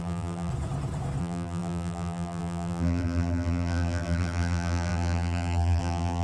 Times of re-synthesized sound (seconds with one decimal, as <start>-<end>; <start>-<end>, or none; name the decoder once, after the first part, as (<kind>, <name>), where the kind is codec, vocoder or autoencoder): 0.0-0.5 (vocoder, BigVGAN v2); 1.2-6.2